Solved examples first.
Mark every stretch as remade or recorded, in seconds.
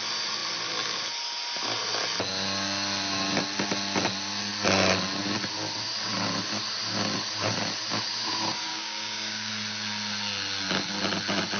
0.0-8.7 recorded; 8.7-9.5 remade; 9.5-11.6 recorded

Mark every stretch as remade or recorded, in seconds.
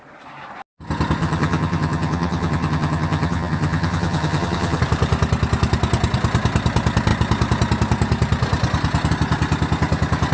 0.0-1.2 recorded; 1.2-4.8 remade; 4.8-10.3 recorded